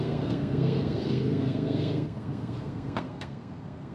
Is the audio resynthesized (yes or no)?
yes